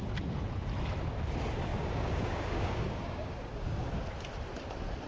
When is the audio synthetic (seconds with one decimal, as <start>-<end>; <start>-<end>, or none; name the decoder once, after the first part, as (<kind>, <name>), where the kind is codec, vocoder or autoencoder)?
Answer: 1.7-3.9 (codec, DAC)

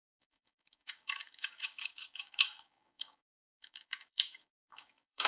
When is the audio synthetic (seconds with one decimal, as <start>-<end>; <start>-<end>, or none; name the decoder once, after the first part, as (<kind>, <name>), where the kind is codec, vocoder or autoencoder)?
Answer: 0.0-5.3 (codec, DAC)

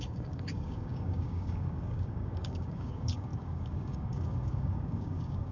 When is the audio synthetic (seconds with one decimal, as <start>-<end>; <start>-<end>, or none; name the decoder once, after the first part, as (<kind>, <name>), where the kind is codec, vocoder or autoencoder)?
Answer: 0.0-5.5 (codec, DAC)